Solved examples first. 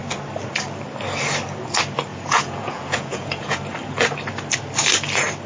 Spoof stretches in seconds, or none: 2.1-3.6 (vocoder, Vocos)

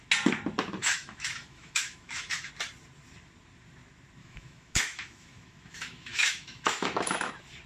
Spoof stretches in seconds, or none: 0.8-2.5 (autoencoder, DAC-VAE); 4.2-7.3

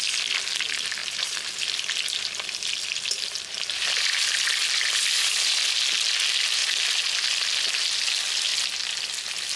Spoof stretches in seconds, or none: none

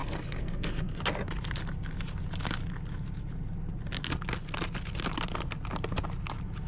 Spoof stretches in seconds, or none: 0.0-1.0 (codec, SNAC)

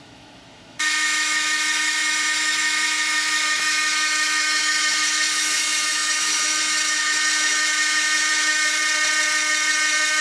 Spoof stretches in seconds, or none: 0.0-8.8 (autoencoder, DAC-VAE); 9.7-10.2

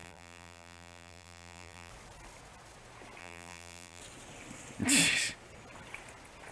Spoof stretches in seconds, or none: 0.0-1.9 (vocoder, BigVGAN v2); 3.2-4.0

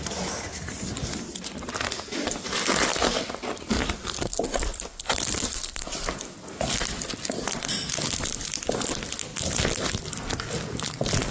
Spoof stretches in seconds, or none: 2.9-4.0 (vocoder, BigVGAN v2); 4.5-5.0; 9.3-10.0

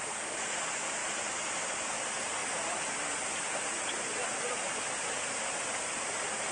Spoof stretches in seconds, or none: 1.0-2.0 (vocoder, BigVGAN v2)